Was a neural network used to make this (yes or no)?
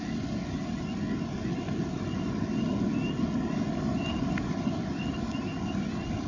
no